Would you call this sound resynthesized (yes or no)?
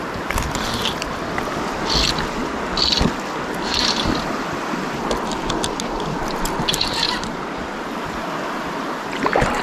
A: no